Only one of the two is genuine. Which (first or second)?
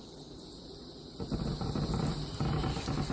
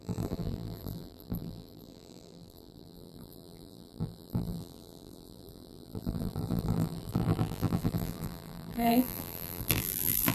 first